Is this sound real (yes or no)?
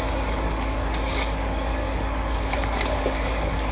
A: no